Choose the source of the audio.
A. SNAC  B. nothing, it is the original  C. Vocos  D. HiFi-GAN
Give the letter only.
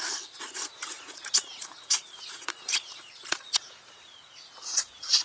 C